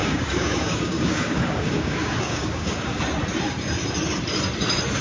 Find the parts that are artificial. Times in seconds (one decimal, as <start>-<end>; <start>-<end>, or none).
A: 0.0-3.0

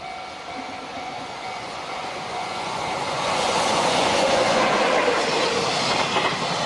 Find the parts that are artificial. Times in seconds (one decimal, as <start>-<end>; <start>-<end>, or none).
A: 0.9-4.9

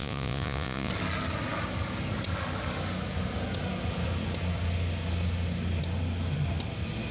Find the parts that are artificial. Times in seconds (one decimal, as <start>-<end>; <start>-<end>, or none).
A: 0.0-0.9

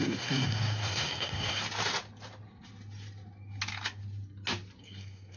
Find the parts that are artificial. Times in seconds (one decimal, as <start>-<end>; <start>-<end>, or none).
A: 0.0-1.6; 4.8-5.4

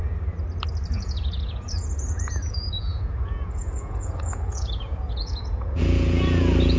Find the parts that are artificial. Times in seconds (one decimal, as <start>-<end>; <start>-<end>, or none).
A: 0.9-6.8

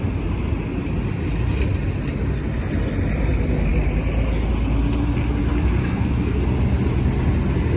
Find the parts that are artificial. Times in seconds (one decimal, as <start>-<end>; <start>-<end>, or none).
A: 5.8-6.4

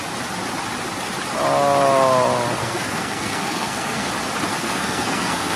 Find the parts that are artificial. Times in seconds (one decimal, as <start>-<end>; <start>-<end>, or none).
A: 2.6-4.1; 4.6-5.6

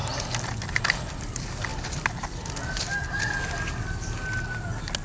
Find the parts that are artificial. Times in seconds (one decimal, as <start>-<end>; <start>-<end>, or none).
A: none